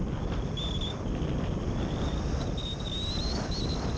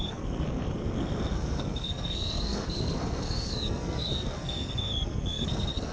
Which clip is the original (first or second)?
first